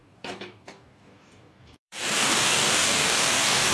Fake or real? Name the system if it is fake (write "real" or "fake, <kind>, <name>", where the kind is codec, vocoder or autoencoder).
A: fake, codec, DAC